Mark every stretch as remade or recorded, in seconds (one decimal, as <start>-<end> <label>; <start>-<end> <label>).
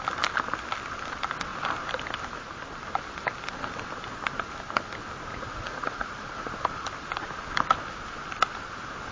0.0-5.3 recorded; 5.3-6.5 remade; 6.5-9.1 recorded